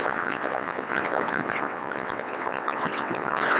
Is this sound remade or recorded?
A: remade